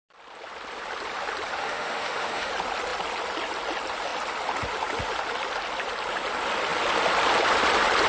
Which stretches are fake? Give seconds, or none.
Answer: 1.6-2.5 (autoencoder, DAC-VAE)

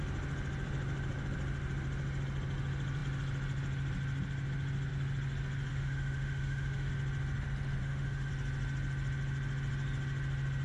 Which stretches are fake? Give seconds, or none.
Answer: 5.7-6.9 (autoencoder, DAC-VAE); 7.8-8.3

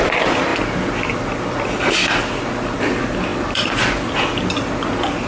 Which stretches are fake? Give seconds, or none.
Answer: none

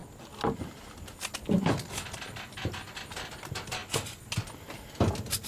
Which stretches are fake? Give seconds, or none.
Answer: none